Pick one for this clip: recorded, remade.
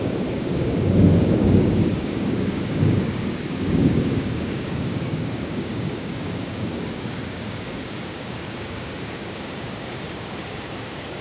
remade